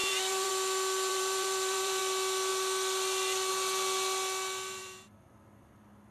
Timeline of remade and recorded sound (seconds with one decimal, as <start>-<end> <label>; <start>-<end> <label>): 0.0-0.5 remade; 0.5-1.1 recorded; 1.1-2.0 remade; 2.0-4.8 recorded; 4.8-5.3 remade; 5.3-6.1 recorded